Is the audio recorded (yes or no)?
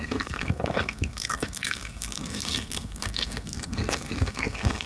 no